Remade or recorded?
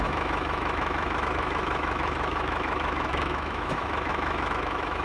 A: remade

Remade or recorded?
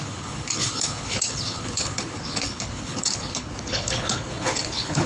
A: remade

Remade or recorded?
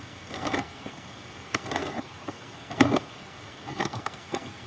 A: remade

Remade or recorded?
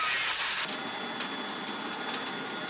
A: recorded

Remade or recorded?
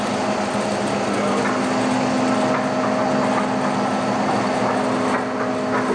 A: recorded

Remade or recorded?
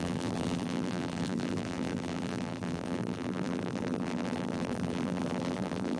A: remade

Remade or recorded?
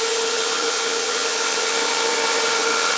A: remade